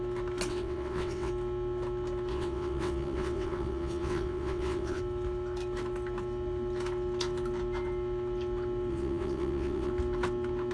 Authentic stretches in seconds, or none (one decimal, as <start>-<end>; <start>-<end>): 0.0-0.5; 1.3-2.3; 5.0-8.9; 9.9-10.7